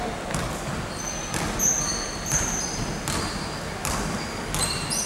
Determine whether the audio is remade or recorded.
recorded